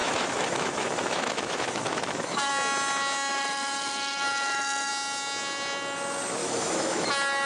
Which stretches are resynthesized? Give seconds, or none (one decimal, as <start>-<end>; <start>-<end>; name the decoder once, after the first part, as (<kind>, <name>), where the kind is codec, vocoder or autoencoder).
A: 0.0-2.5 (autoencoder, DAC-VAE); 3.3-4.9; 6.4-7.1